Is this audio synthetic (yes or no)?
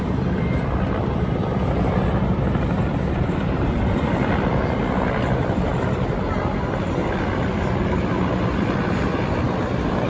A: yes